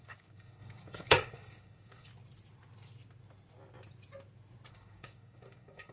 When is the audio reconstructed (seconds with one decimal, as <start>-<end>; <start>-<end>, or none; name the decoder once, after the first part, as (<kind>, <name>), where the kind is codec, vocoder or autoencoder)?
0.0-2.1 (codec, DAC); 4.7-5.9